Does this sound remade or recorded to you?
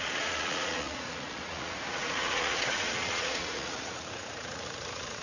remade